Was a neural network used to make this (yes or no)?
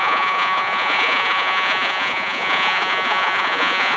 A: yes